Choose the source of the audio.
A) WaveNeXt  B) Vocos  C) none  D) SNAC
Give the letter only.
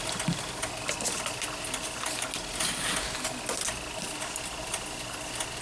C